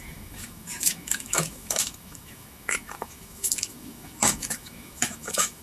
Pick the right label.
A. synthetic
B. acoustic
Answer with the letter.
A